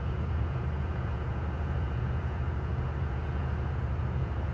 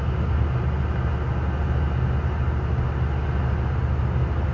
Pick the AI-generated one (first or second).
first